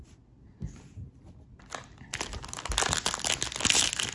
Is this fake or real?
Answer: real